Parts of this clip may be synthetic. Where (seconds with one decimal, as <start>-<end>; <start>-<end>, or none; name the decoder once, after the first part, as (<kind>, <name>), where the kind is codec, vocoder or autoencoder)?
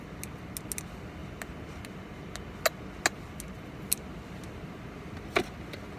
none